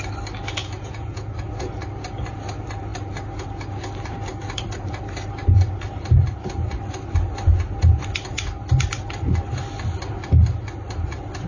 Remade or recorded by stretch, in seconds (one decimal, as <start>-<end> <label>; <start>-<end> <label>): 0.0-0.6 recorded; 0.6-1.5 remade; 1.5-11.5 recorded